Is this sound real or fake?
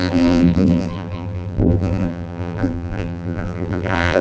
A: fake